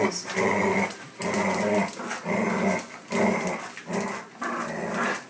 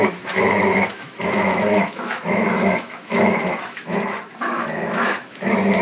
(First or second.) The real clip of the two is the first